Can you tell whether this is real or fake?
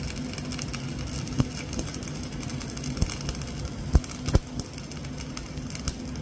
real